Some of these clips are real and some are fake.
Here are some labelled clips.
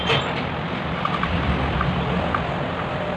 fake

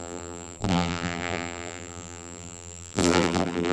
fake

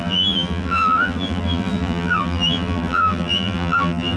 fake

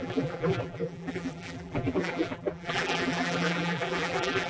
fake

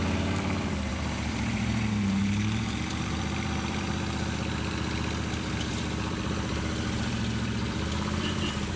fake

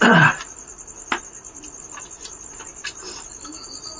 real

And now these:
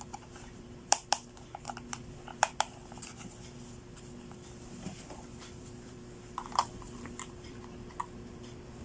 fake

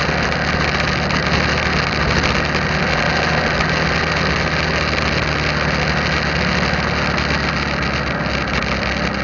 real